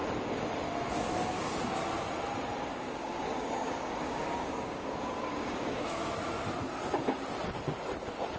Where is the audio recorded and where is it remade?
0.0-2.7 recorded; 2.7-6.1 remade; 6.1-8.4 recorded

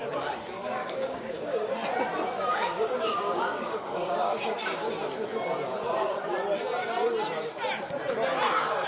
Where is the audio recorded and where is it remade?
0.0-0.8 recorded; 0.8-1.7 remade; 1.7-2.5 recorded; 2.5-4.9 remade; 4.9-8.9 recorded